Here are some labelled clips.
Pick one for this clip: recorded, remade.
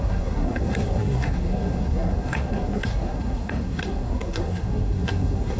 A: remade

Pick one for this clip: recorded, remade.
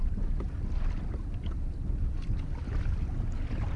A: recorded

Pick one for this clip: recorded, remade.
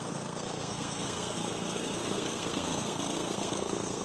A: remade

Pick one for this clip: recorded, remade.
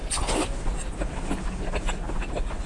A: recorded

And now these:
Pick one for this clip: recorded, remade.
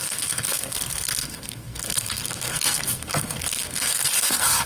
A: remade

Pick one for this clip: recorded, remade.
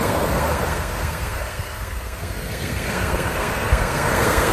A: remade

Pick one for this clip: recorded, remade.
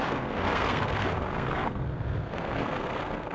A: remade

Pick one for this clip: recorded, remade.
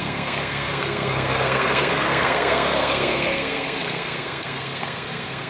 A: remade